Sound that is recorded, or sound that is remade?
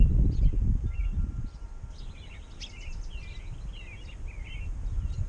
recorded